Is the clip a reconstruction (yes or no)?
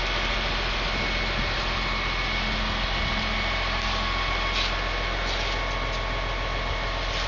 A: no